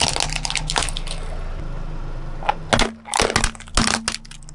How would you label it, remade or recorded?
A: recorded